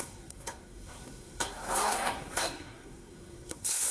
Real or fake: fake